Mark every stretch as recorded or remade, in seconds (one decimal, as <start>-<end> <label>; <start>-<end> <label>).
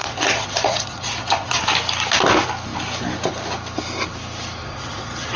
0.0-1.6 remade; 1.6-4.6 recorded; 4.6-5.4 remade